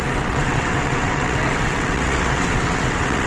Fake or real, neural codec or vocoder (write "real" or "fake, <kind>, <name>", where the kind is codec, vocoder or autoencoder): fake, vocoder, WaveNeXt